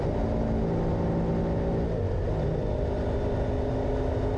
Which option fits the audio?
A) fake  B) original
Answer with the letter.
B